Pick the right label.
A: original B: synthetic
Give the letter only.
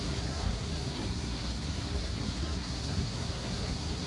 B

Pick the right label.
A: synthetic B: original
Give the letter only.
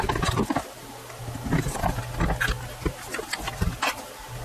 B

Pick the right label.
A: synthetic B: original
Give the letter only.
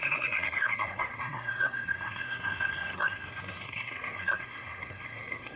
A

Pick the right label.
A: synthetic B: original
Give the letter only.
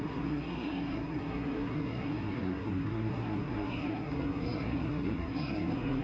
A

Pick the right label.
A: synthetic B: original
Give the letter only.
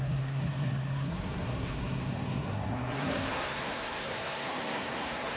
A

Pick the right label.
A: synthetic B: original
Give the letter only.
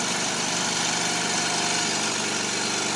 B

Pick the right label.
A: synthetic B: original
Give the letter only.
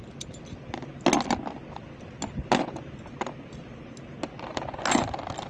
B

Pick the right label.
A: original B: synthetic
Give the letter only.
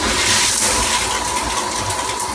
A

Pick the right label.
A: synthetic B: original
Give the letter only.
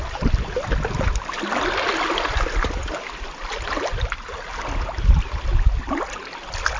B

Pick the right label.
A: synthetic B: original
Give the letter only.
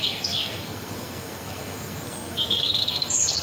A